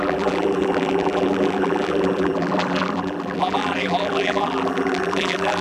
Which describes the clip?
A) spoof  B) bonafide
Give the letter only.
A